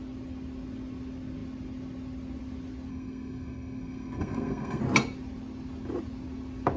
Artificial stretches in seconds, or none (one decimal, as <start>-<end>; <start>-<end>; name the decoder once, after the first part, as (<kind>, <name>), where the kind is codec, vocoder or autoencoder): 2.9-4.8 (codec, SNAC)